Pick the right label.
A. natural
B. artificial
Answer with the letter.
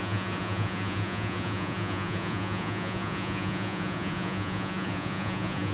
B